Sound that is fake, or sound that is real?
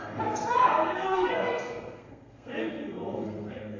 fake